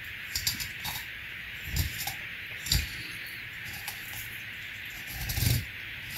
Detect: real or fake fake